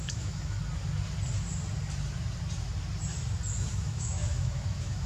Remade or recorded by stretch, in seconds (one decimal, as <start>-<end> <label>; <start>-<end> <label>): 0.0-0.6 remade; 0.6-3.7 recorded; 3.7-5.1 remade